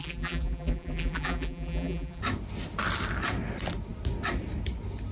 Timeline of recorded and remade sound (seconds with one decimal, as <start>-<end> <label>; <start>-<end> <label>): 0.0-2.2 remade; 2.2-5.1 recorded